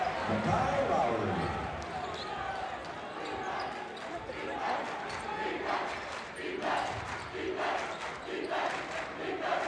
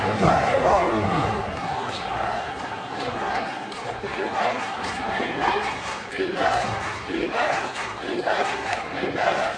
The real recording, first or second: first